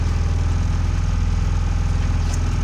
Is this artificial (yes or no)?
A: no